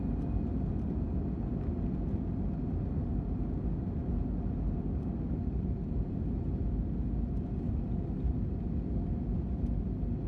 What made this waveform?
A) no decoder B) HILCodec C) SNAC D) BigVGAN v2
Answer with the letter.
A